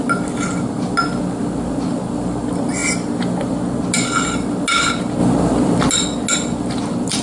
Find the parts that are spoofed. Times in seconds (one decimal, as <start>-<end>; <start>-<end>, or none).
none